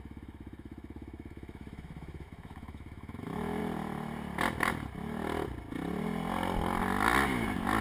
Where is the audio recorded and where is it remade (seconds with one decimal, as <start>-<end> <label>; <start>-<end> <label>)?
0.0-3.6 remade; 3.6-7.8 recorded